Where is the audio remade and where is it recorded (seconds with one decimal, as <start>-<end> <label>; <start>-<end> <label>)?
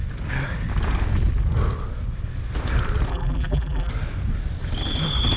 0.0-3.1 recorded; 3.1-3.9 remade; 3.9-5.4 recorded